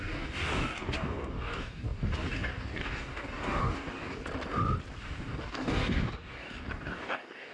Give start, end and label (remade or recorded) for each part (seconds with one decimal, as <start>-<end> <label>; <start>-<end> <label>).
0.0-4.2 remade; 4.2-5.0 recorded; 5.0-7.5 remade